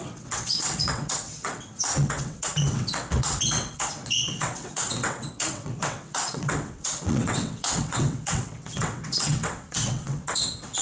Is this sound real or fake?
fake